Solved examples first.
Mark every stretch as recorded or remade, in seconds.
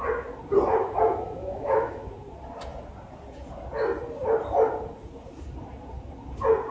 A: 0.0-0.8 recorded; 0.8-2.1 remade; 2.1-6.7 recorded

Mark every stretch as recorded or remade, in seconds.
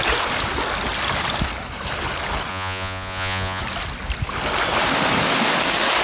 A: 0.0-2.5 recorded; 2.5-3.6 remade; 3.6-6.0 recorded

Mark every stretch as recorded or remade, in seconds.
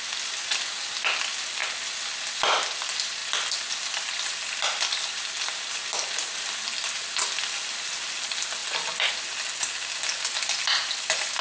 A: 0.0-11.4 recorded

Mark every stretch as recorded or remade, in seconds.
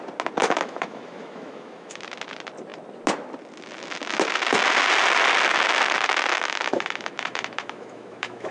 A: 0.0-0.4 recorded; 0.4-2.0 remade; 2.0-6.3 recorded; 6.3-8.5 remade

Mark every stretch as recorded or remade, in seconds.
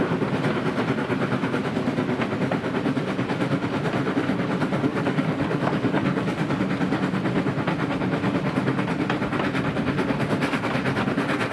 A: 0.0-4.9 recorded; 4.9-6.6 remade; 6.6-11.5 recorded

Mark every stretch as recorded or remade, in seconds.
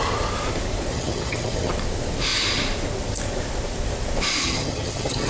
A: 0.0-0.9 recorded; 0.9-1.7 remade; 1.7-4.4 recorded; 4.4-5.3 remade